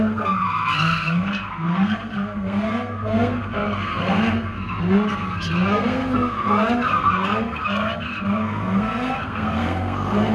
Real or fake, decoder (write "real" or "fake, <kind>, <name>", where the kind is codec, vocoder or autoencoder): fake, codec, SNAC